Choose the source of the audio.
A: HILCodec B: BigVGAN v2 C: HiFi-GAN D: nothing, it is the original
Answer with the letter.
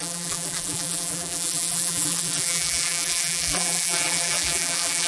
B